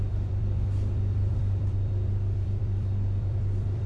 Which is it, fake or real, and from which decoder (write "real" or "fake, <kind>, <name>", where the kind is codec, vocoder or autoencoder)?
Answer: fake, vocoder, BigVGAN v2